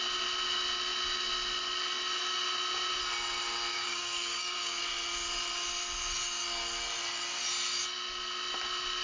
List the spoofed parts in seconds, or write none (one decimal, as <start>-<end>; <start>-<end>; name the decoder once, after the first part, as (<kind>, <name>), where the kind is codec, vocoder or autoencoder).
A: 3.7-4.8 (codec, DAC)